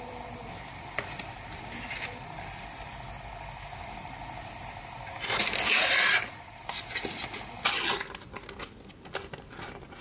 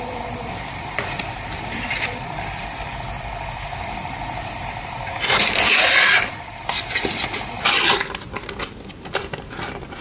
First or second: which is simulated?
second